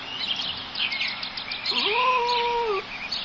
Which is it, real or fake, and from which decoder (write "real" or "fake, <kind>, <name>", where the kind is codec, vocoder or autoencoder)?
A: real